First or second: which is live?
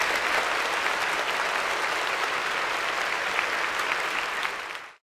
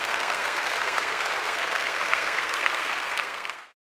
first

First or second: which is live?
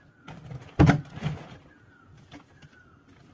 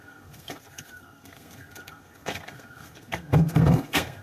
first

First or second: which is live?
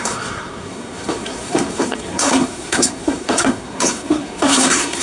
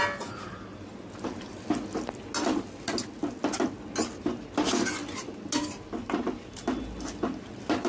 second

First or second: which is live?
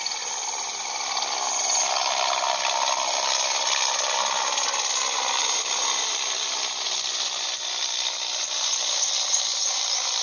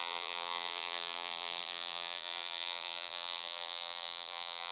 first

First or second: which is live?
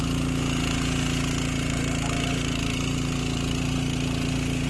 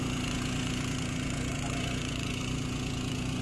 first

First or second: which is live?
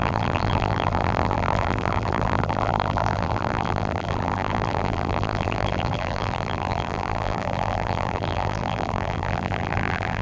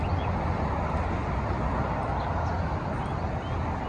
second